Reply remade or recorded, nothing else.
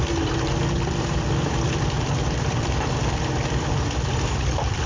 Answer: remade